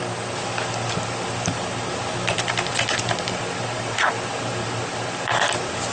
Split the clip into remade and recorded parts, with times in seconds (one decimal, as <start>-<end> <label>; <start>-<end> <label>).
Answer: 0.0-5.9 recorded